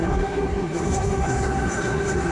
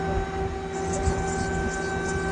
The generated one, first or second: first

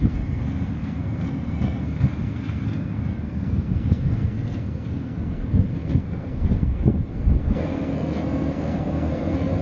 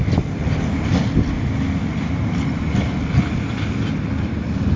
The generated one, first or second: first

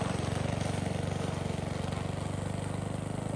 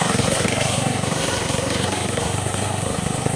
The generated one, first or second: second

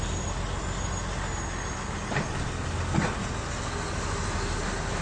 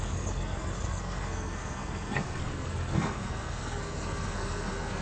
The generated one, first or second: second